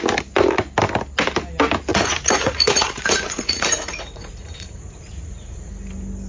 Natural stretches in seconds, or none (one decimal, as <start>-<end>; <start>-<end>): 0.0-1.9; 5.7-6.3